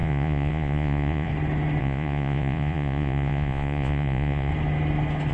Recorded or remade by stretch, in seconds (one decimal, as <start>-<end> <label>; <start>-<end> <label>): 0.0-1.3 remade; 1.3-1.8 recorded; 1.8-4.5 remade; 4.5-5.3 recorded